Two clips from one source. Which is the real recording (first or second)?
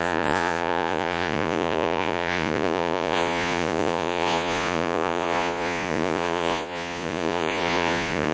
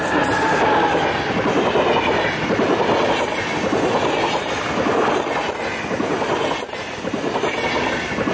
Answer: second